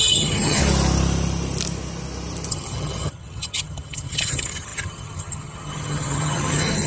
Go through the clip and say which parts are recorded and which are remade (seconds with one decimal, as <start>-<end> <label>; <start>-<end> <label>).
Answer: 0.0-0.6 remade; 0.6-2.5 recorded; 2.5-6.9 remade